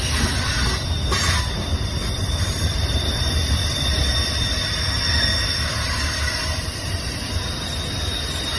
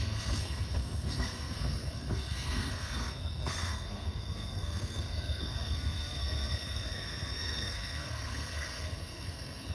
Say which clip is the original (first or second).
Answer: first